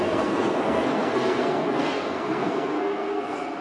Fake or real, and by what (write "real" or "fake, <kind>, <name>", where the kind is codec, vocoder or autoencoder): fake, codec, SNAC